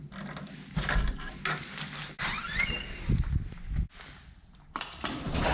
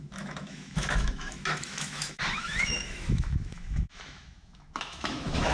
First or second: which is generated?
second